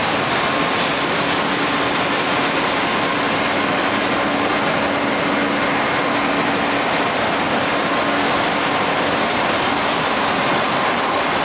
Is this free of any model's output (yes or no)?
yes